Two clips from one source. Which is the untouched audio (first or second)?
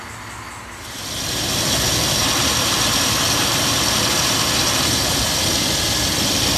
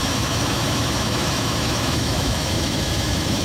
first